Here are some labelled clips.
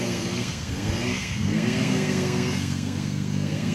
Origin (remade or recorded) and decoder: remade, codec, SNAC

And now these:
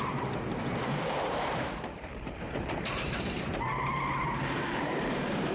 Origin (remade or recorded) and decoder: remade, vocoder, BigVGAN v2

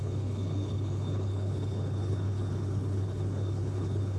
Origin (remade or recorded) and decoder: remade, codec, HILCodec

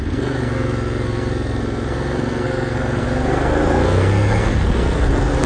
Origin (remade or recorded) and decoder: remade, codec, SNAC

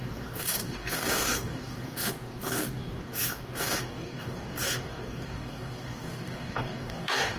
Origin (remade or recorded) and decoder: remade, codec, DAC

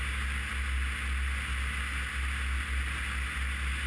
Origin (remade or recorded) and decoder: recorded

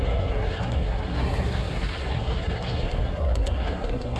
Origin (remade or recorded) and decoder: remade, codec, SNAC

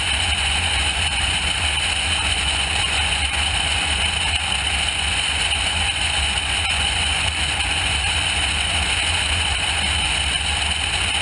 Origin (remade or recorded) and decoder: remade, vocoder, Vocos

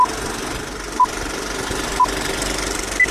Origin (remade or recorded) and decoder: recorded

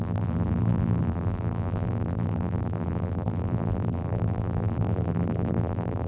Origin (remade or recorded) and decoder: remade, vocoder, BigVGAN v2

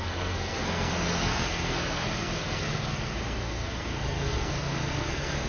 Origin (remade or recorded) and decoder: remade, codec, SNAC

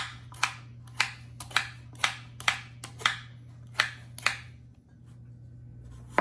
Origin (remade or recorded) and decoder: recorded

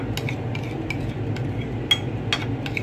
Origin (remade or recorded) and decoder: recorded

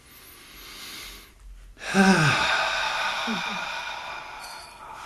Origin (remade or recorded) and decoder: recorded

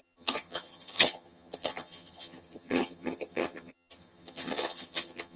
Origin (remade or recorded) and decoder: remade, vocoder, HiFi-GAN